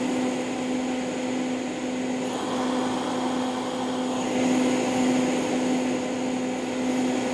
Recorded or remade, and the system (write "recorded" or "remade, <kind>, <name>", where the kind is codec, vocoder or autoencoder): recorded